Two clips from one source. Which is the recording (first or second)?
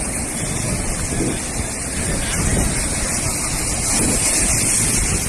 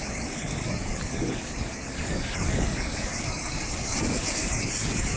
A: first